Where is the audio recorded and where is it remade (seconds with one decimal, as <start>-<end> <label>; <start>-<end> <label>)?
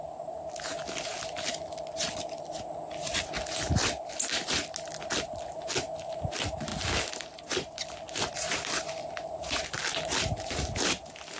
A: 0.0-11.4 recorded